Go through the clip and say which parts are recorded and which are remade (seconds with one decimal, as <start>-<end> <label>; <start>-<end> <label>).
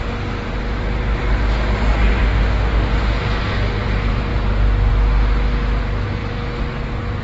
0.0-2.2 recorded; 2.2-2.9 remade; 2.9-7.2 recorded